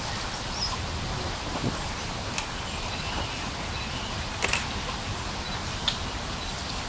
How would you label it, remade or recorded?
recorded